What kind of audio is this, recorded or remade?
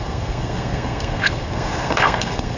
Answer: remade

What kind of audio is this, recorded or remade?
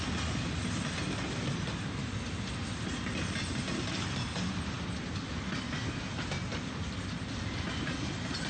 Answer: recorded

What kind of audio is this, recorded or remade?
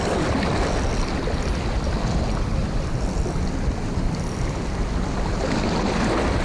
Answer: recorded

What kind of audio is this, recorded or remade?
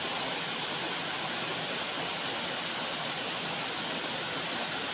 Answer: recorded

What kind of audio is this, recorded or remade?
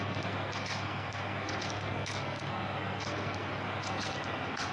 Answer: remade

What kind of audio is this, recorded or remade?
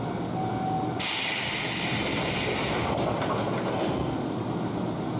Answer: recorded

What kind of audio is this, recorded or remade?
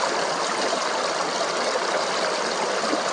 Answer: recorded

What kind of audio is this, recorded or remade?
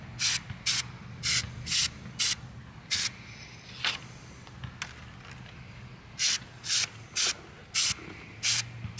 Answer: recorded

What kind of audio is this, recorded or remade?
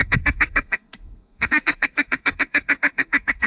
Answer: remade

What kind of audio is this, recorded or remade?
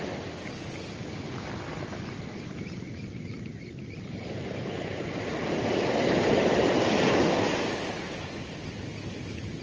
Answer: recorded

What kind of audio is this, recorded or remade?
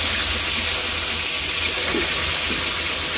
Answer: recorded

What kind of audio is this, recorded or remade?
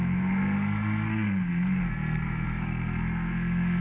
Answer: remade